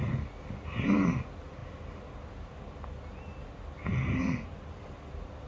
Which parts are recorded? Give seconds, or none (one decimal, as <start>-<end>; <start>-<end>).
0.0-5.5